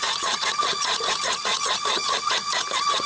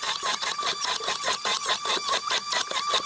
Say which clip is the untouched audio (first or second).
second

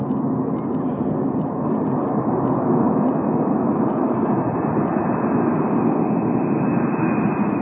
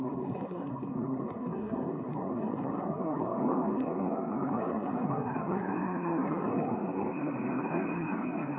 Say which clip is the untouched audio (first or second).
first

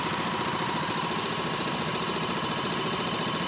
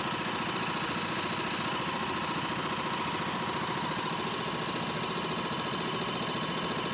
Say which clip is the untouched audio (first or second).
second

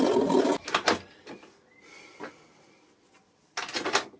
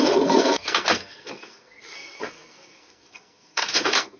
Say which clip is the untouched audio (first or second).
first